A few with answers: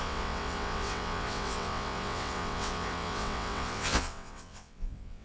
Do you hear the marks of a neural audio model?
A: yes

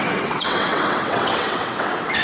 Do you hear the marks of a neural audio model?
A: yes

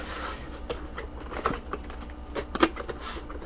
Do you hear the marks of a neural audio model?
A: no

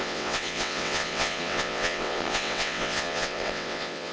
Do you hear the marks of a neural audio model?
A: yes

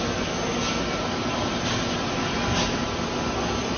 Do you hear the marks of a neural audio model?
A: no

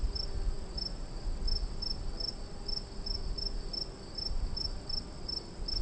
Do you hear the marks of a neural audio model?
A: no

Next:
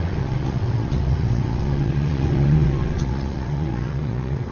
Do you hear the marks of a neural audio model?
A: yes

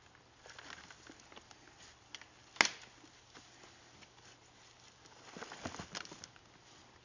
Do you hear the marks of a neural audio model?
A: no